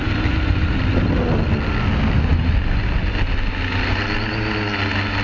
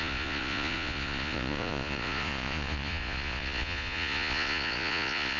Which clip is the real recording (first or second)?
first